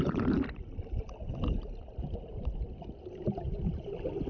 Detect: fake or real real